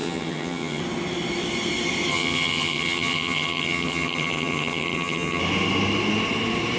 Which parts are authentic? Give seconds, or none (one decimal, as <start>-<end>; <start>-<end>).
0.8-2.1; 5.4-6.8